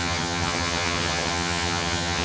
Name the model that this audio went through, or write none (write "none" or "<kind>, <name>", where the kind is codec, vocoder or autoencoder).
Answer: vocoder, HiFi-GAN